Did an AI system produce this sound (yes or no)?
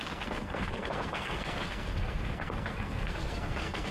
yes